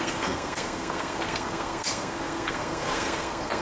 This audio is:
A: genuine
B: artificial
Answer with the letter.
B